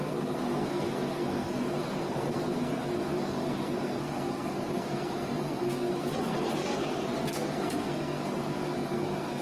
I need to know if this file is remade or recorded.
remade